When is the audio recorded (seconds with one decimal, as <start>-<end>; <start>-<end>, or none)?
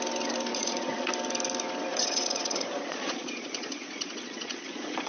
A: 0.0-0.5; 1.1-1.9